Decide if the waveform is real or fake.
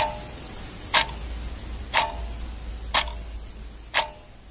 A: real